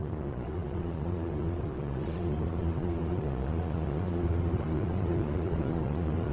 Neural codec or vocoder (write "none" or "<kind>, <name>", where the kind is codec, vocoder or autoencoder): vocoder, Vocos